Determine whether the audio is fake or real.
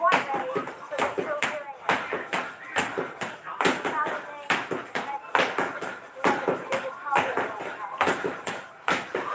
real